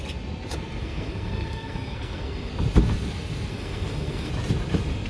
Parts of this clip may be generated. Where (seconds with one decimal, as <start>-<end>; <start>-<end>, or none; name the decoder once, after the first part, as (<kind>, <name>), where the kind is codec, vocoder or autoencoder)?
0.8-2.5 (codec, SNAC); 3.5-4.3

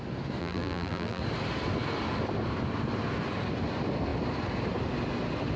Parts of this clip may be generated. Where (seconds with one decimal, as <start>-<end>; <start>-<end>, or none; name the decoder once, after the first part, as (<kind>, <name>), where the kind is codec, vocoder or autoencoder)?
0.4-1.2 (vocoder, BigVGAN v2)

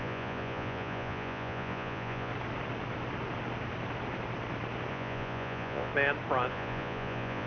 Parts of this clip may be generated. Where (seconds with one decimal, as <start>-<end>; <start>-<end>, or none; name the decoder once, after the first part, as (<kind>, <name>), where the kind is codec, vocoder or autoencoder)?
0.0-2.3 (vocoder, Vocos); 4.9-5.9; 6.5-7.5

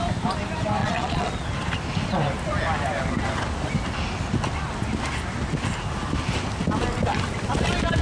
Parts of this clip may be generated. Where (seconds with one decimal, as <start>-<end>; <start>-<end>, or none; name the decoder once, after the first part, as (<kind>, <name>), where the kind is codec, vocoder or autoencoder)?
0.8-1.3 (vocoder, Vocos)